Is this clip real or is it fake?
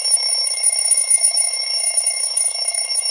fake